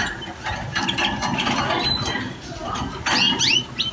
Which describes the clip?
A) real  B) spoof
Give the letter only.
A